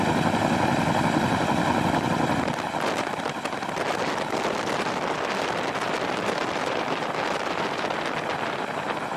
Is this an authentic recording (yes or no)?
yes